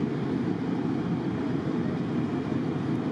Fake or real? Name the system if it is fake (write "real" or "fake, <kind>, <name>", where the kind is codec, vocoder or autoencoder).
fake, vocoder, BigVGAN v2